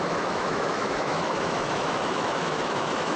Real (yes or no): no